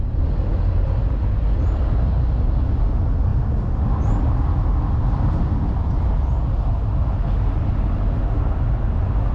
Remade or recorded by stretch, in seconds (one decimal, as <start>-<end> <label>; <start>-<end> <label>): 0.0-9.3 recorded